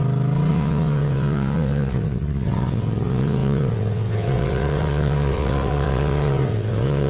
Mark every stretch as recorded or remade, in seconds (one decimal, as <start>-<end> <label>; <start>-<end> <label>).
0.0-0.5 recorded; 0.5-7.1 remade